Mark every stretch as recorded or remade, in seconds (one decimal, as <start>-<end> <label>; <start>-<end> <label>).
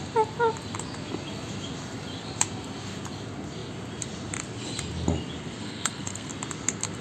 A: 0.0-5.4 recorded; 5.4-6.3 remade; 6.3-7.0 recorded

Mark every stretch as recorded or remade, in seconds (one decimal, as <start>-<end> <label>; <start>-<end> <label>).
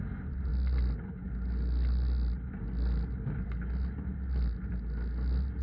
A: 0.0-5.6 recorded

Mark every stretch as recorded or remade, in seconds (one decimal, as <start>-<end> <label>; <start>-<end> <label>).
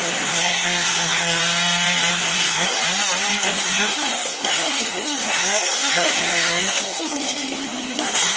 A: 0.0-1.4 remade; 1.4-2.1 recorded; 2.1-2.8 remade; 2.8-3.3 recorded; 3.3-8.4 remade